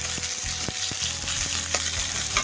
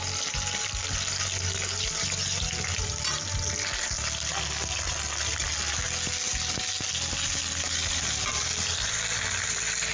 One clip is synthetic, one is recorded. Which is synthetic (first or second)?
first